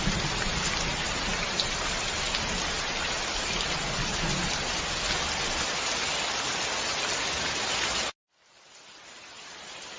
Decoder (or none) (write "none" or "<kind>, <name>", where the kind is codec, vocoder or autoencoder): none